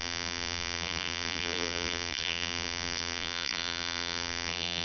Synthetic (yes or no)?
yes